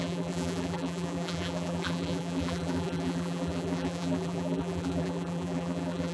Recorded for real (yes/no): no